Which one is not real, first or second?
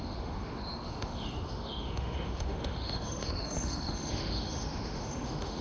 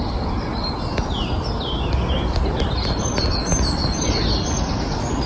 first